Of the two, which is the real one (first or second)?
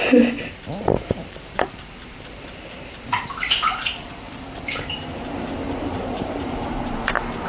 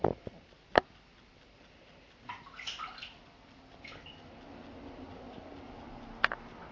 second